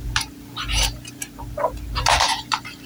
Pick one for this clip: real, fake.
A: fake